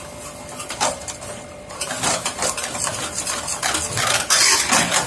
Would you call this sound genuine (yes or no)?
yes